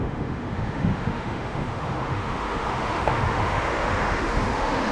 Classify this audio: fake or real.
fake